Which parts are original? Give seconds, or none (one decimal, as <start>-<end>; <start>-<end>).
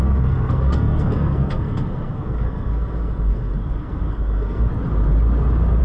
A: 4.7-5.8